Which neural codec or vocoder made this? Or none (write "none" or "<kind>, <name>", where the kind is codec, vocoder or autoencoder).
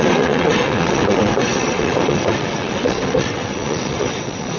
vocoder, WaveNeXt